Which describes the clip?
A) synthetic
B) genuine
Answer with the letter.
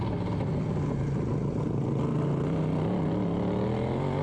B